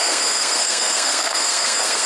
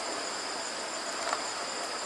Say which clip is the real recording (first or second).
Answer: second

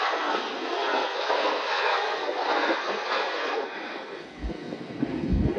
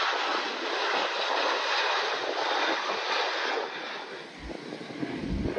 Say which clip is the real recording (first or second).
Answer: second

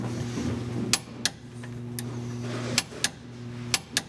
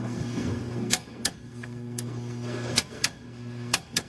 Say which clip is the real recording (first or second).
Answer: first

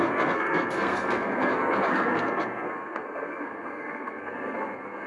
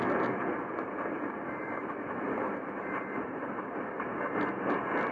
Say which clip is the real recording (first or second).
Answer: second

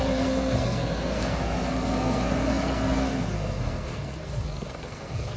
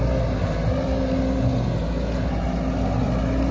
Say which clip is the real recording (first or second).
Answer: second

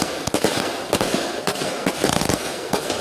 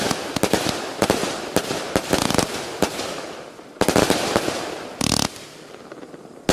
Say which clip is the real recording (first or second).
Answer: second